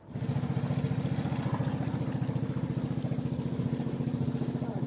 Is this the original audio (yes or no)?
yes